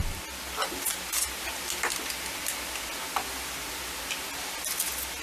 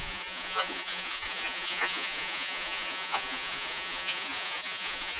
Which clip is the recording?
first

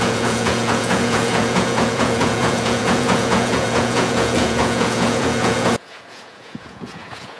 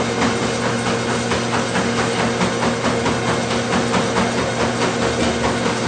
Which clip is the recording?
second